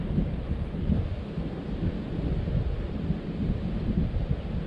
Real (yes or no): yes